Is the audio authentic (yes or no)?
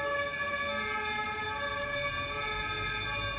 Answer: yes